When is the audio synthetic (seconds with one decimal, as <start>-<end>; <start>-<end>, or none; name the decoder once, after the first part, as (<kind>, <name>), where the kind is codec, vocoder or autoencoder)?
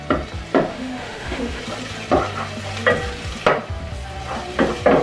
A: 0.7-1.6 (autoencoder, DAC-VAE)